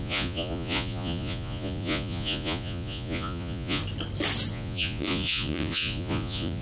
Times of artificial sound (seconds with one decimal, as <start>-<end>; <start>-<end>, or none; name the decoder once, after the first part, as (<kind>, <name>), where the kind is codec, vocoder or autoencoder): 0.0-3.8 (vocoder, Vocos); 4.5-6.6